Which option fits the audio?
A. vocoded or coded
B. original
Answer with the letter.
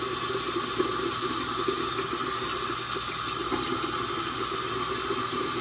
B